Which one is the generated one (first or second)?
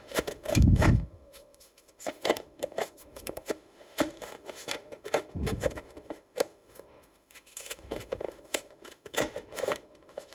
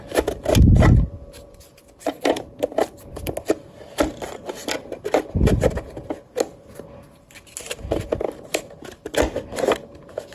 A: first